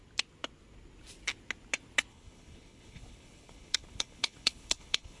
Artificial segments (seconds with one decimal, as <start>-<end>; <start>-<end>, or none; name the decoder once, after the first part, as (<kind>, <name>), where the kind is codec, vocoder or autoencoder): 2.1-5.2 (codec, HILCodec)

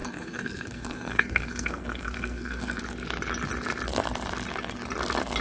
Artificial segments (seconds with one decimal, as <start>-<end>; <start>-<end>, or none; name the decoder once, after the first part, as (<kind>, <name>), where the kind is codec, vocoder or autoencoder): 0.0-2.8 (codec, SNAC)

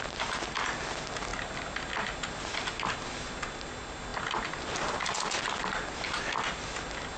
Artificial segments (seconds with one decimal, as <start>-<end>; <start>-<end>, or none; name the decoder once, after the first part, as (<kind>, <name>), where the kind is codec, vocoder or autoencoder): none

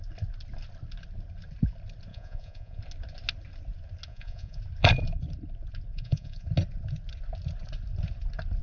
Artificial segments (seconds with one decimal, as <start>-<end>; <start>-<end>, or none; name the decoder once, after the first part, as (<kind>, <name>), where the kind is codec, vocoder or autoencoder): 2.1-2.8 (vocoder, Vocos); 4.1-4.6; 5.9-6.5

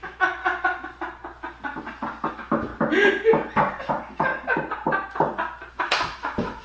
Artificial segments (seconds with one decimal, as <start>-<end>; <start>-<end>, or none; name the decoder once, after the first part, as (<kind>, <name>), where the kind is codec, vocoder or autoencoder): 0.0-0.4 (autoencoder, DAC-VAE); 2.3-2.7; 3.9-4.3; 5.7-6.6

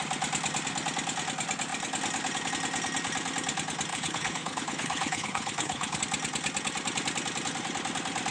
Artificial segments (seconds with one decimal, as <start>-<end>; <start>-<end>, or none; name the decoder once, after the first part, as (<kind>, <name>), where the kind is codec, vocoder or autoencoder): 3.9-6.0 (codec, HILCodec)

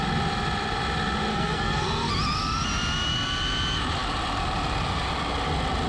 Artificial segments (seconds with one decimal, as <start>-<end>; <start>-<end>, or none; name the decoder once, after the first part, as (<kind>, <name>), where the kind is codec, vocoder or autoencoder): 1.3-2.1 (codec, SNAC)